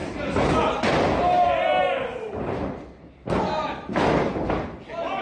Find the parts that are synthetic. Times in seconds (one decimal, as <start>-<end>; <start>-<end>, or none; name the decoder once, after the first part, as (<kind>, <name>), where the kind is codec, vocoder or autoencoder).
none